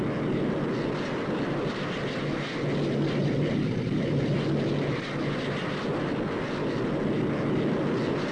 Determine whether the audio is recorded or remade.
recorded